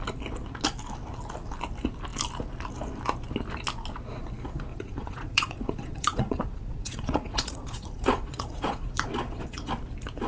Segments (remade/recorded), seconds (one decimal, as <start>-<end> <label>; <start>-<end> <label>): 0.0-4.7 recorded; 4.7-9.7 remade; 9.7-10.3 recorded